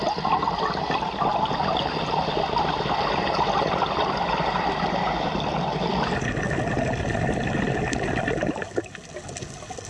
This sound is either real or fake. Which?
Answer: real